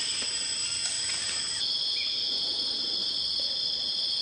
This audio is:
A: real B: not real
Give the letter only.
A